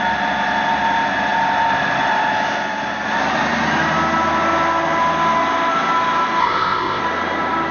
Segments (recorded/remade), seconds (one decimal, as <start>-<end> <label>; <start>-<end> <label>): 0.0-6.4 recorded; 6.4-7.0 remade; 7.0-7.7 recorded